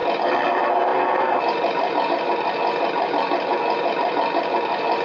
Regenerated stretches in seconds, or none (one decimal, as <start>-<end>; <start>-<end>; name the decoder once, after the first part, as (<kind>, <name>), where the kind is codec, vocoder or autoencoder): 0.5-5.0 (vocoder, BigVGAN v2)